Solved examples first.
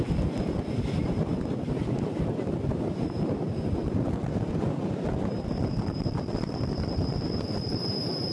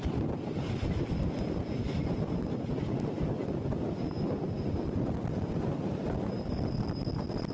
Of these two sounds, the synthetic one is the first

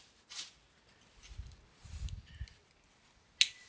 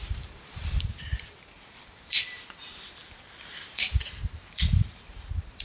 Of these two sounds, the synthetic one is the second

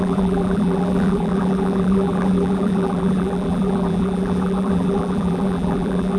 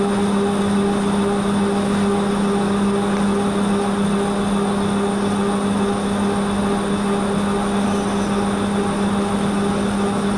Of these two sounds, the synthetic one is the first